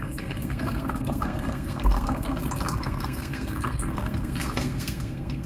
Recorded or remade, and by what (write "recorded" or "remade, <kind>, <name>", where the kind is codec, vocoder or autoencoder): remade, codec, SNAC